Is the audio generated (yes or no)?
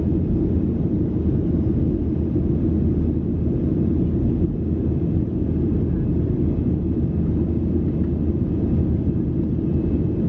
no